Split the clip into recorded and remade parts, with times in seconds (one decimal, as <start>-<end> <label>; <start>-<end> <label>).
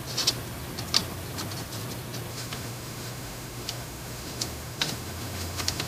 0.0-2.3 recorded; 2.3-5.9 remade